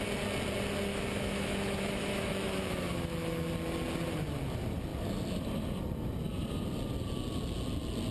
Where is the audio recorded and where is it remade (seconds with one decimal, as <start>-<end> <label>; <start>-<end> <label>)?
0.0-0.9 recorded; 0.9-3.5 remade; 3.5-8.1 recorded